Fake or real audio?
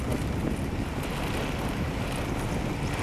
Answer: real